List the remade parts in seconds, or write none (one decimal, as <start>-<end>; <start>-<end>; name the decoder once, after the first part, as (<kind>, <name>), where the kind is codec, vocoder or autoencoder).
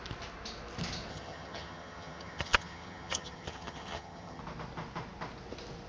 1.1-4.4 (vocoder, HiFi-GAN)